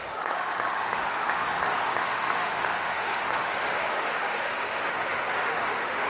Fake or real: fake